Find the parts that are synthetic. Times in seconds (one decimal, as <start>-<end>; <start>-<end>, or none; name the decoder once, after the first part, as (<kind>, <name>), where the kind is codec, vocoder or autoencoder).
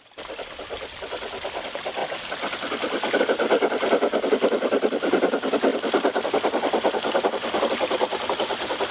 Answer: none